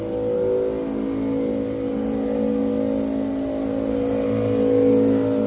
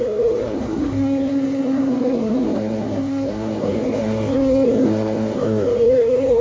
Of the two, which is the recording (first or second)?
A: first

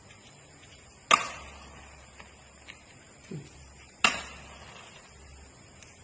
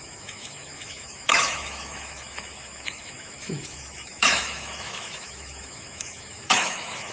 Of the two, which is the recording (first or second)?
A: first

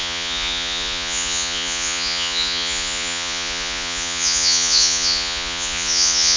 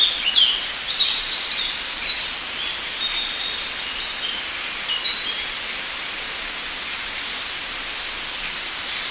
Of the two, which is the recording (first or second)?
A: second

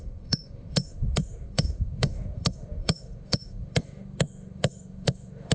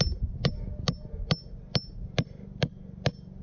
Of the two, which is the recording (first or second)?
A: second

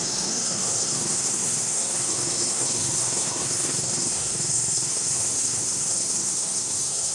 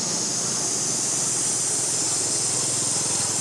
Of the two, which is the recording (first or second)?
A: second